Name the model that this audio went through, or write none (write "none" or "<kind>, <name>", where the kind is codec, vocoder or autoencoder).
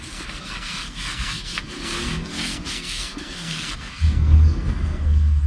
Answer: codec, SNAC